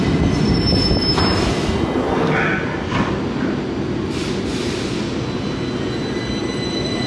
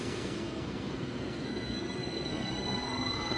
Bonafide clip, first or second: first